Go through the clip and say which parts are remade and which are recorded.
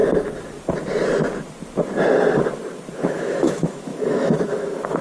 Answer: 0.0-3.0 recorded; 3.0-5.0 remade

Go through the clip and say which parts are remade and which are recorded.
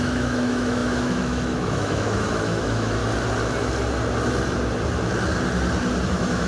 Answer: 0.0-3.0 remade; 3.0-6.0 recorded; 6.0-6.5 remade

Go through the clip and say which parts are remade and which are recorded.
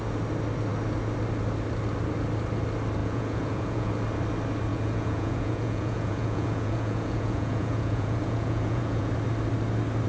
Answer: 0.0-3.0 recorded; 3.0-3.9 remade; 3.9-4.7 recorded; 4.7-9.1 remade; 9.1-10.1 recorded